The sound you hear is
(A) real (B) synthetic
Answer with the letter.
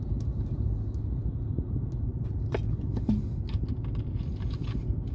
A